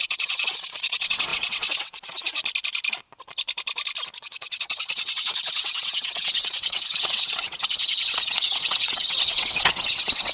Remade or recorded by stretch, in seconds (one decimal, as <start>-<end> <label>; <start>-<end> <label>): 0.0-2.4 remade; 2.4-4.2 recorded; 4.2-10.3 remade